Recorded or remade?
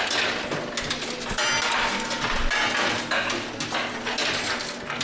recorded